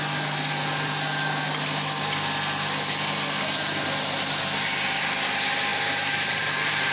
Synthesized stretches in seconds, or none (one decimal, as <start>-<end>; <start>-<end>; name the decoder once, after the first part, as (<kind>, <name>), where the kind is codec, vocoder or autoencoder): 5.7-6.5 (vocoder, BigVGAN v2)